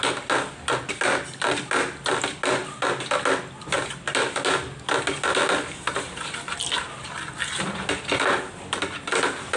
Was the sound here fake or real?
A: real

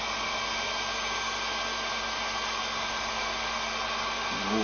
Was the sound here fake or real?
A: real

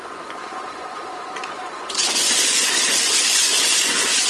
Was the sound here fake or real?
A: fake